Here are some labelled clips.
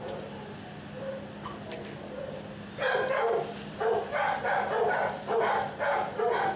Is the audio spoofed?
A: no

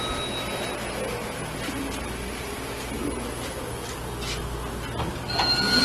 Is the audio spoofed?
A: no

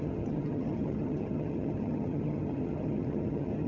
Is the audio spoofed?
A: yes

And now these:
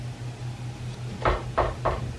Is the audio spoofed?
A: no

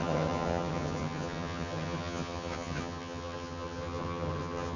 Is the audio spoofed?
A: yes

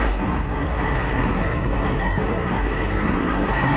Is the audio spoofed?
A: yes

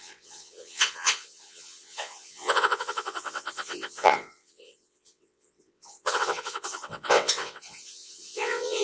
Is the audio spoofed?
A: yes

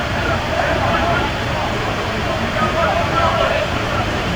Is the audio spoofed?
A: yes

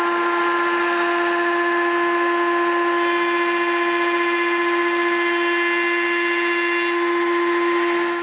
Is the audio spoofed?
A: no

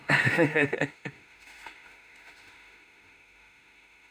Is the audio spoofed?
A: yes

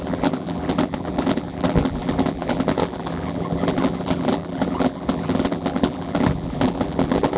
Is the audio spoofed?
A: yes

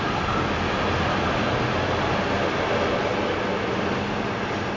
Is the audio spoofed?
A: no